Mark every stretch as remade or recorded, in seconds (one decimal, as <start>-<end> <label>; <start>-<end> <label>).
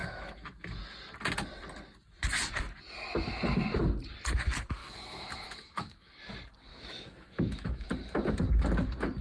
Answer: 0.0-0.8 remade; 0.8-4.8 recorded; 4.8-6.2 remade; 6.2-6.7 recorded; 6.7-7.9 remade; 7.9-9.2 recorded